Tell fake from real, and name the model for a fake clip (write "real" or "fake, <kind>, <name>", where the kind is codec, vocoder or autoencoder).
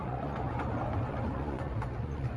fake, vocoder, Vocos